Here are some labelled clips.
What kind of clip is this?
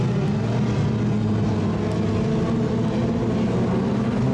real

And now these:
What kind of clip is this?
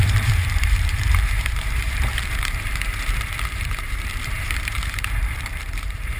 fake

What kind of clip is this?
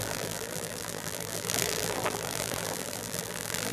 fake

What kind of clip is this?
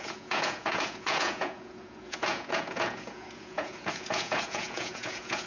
fake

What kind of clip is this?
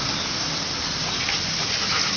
real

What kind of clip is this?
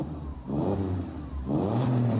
fake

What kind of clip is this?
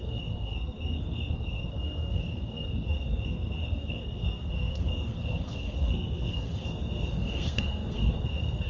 fake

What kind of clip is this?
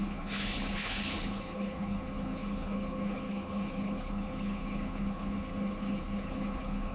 fake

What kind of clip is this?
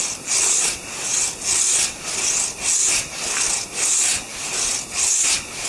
real